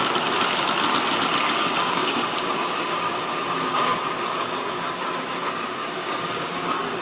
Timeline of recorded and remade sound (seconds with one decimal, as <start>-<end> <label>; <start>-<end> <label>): 0.0-1.5 recorded; 1.5-7.0 remade